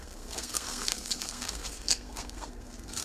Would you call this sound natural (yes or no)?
no